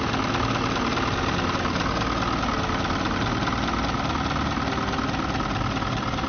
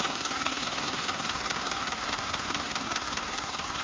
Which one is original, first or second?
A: first